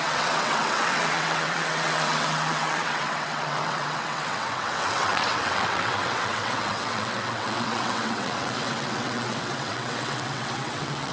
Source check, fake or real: fake